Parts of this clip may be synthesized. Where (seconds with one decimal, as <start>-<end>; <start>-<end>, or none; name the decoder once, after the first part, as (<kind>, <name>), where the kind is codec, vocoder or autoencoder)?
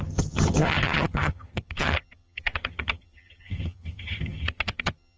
0.0-5.2 (vocoder, HiFi-GAN)